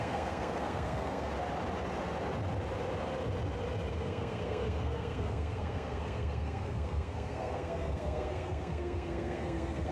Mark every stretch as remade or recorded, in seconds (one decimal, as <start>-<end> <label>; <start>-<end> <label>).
0.0-1.3 remade; 1.3-3.9 recorded; 3.9-9.9 remade